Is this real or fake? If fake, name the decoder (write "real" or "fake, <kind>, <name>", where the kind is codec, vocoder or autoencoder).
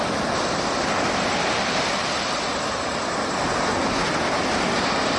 real